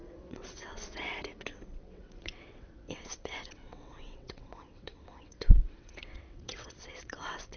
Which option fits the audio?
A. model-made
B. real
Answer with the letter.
A